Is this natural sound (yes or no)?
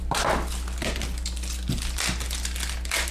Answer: yes